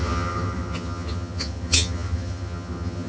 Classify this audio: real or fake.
fake